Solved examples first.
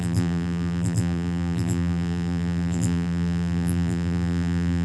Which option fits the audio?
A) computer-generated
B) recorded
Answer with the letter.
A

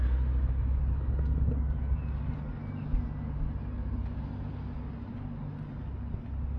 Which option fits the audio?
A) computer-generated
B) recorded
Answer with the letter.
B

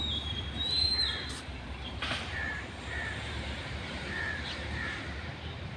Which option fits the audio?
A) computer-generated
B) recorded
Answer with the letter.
A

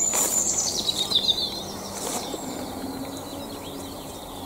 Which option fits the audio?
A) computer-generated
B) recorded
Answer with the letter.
A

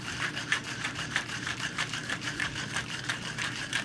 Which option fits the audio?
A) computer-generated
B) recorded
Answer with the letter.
A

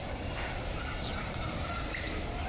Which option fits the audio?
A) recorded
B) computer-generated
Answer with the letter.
B